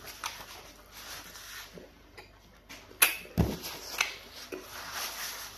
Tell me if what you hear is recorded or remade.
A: recorded